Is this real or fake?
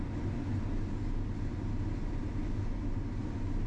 real